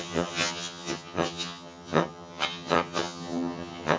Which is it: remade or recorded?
remade